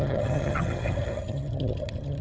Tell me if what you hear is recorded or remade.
remade